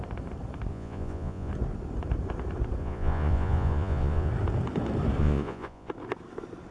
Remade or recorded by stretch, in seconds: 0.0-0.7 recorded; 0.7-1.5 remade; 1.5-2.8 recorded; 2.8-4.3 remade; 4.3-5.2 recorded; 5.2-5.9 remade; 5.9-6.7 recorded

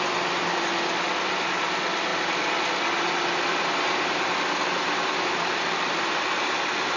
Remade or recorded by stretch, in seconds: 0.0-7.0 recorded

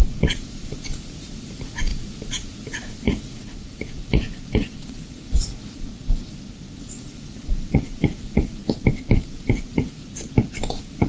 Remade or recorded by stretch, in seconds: 0.0-5.9 remade; 5.9-6.8 recorded; 6.8-8.6 remade; 8.6-9.2 recorded; 9.2-10.0 remade; 10.0-10.7 recorded; 10.7-11.1 remade

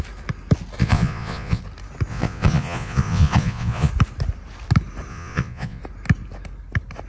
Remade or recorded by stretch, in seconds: 0.0-0.8 recorded; 0.8-1.6 remade; 1.6-2.1 recorded; 2.1-3.9 remade; 3.9-5.1 recorded; 5.1-5.8 remade; 5.8-7.1 recorded

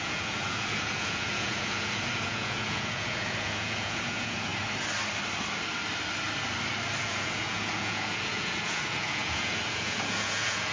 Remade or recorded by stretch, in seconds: 0.0-4.5 remade; 4.5-7.0 recorded; 7.0-10.7 remade

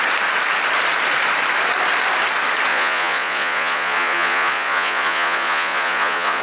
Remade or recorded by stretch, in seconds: 0.0-2.7 recorded; 2.7-6.4 remade